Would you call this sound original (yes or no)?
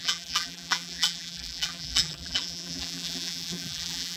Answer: no